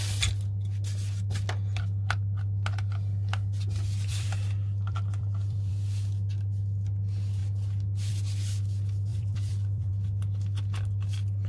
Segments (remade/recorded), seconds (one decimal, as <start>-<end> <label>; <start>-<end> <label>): 0.0-4.1 recorded; 4.1-5.7 remade; 5.7-9.1 recorded; 9.1-9.9 remade; 9.9-11.5 recorded